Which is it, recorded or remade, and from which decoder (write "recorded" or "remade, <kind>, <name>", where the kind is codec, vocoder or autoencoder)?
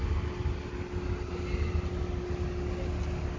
recorded